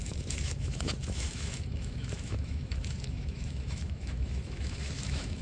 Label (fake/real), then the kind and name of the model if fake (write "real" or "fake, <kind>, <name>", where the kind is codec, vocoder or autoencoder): fake, autoencoder, DAC-VAE